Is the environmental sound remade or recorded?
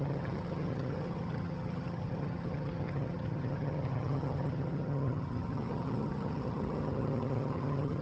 remade